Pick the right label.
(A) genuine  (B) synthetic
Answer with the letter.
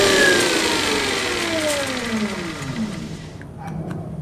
A